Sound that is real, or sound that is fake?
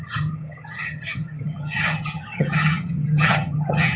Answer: fake